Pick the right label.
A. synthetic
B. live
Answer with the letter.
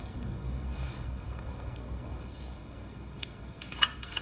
A